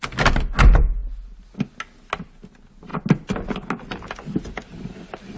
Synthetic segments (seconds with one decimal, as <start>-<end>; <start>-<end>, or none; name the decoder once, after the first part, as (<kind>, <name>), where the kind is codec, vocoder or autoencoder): none